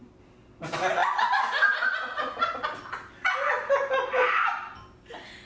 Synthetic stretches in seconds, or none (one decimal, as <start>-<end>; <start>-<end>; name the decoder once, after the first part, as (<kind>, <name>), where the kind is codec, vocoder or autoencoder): none